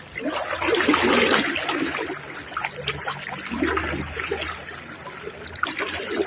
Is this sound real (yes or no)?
yes